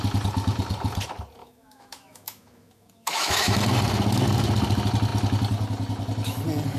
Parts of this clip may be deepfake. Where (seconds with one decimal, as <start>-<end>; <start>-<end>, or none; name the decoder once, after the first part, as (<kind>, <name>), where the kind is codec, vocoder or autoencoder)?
1.4-3.6 (autoencoder, DAC-VAE)